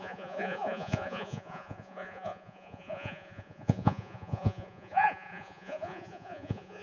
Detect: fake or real fake